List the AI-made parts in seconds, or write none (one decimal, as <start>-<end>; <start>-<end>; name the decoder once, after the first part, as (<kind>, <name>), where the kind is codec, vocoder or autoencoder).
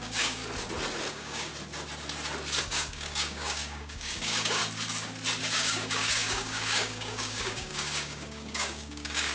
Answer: 0.0-0.4 (codec, DAC); 1.1-1.5; 2.6-4.6; 5.4-9.3